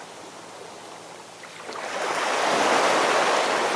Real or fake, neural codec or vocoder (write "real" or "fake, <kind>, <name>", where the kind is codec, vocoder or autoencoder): real